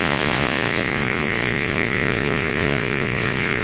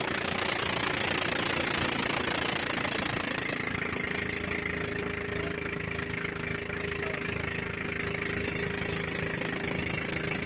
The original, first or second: second